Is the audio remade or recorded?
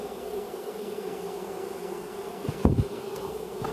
remade